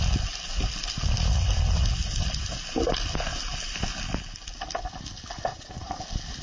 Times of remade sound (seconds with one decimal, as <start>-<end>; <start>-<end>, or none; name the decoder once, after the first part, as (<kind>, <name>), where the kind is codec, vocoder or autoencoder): 5.5-6.0 (vocoder, Vocos)